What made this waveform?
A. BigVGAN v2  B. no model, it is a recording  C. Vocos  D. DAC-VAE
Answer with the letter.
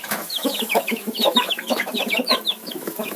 D